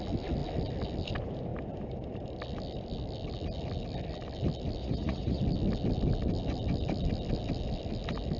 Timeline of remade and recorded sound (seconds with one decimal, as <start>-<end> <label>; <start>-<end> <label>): 0.0-4.8 recorded; 4.8-5.4 remade; 5.4-8.4 recorded

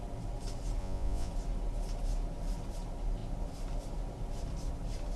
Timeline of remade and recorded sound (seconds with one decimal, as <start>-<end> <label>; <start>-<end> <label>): 0.0-0.8 recorded; 0.8-1.3 remade; 1.3-5.2 recorded

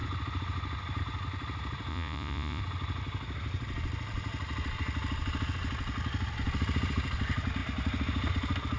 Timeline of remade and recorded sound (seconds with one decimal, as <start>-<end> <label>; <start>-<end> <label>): 0.0-1.9 recorded; 1.9-2.6 remade; 2.6-8.8 recorded

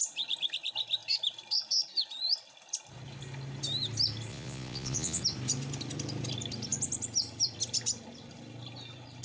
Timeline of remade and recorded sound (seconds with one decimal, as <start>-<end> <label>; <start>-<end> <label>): 0.0-4.3 recorded; 4.3-5.2 remade; 5.2-9.2 recorded